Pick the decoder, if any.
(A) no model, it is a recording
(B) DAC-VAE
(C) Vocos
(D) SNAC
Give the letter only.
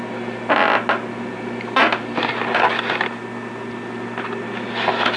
A